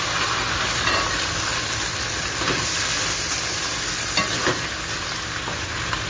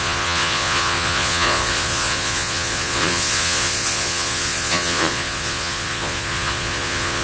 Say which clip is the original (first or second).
first